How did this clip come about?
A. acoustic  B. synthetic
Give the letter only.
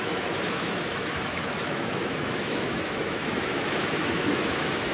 B